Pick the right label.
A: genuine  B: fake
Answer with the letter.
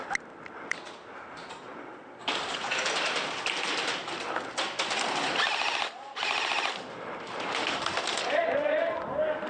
A